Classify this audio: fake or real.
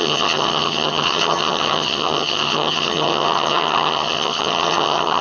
fake